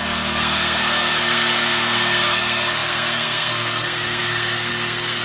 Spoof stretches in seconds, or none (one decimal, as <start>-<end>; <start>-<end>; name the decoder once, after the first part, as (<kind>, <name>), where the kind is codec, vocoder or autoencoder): 0.0-5.2 (codec, SNAC)